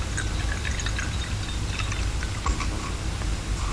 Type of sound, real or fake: real